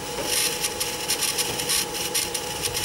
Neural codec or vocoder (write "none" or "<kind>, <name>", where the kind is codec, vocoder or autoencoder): vocoder, BigVGAN v2